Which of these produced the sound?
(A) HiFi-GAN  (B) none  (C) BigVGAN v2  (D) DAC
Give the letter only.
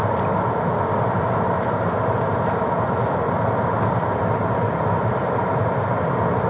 B